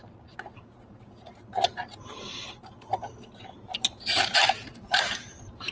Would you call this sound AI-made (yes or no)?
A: yes